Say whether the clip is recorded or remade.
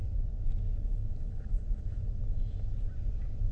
recorded